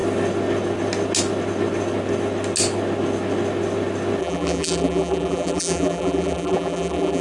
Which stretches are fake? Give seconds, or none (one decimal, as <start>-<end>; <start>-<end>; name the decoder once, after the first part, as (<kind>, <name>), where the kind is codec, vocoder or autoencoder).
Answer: 4.2-7.2 (vocoder, BigVGAN v2)